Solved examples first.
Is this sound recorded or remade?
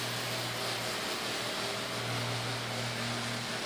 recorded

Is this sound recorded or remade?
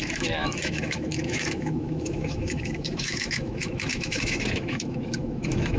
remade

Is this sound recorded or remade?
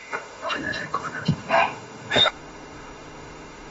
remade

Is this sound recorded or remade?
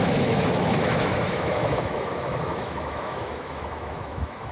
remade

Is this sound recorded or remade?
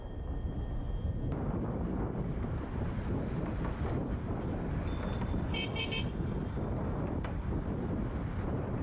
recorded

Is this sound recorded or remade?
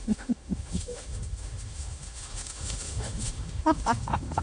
remade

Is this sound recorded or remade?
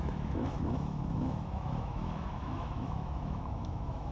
remade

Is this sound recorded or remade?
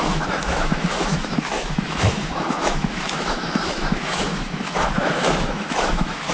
remade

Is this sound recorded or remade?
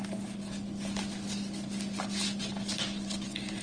recorded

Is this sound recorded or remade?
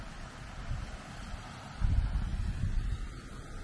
recorded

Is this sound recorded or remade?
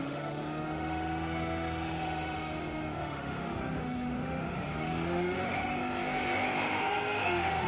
remade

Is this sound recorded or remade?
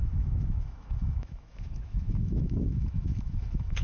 remade